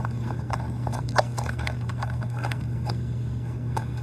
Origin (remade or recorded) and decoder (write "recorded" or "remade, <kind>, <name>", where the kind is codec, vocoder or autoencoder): remade, codec, SNAC